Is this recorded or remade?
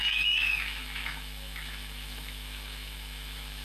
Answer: remade